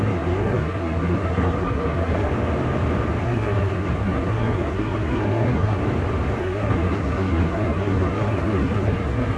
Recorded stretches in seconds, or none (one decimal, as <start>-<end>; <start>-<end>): 2.3-3.2; 5.8-6.4